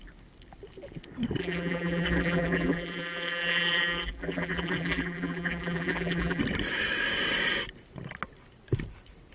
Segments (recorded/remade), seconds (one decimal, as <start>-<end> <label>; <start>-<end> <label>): 0.0-1.4 recorded; 1.4-6.4 remade; 6.4-9.3 recorded